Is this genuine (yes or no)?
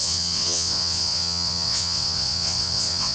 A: no